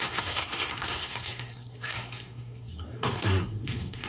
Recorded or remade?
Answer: remade